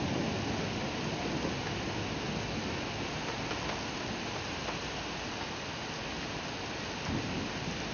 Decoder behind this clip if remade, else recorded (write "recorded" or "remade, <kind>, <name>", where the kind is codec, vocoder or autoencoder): recorded